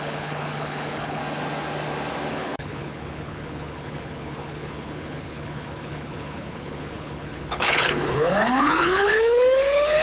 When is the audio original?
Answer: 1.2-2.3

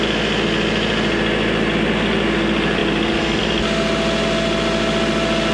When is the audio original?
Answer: 0.0-5.5